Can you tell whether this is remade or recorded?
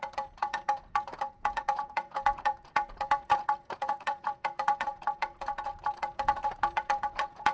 remade